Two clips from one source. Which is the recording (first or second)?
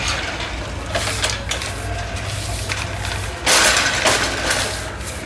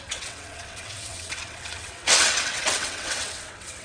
first